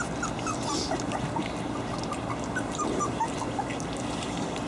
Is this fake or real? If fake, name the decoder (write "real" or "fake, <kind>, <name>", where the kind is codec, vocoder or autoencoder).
real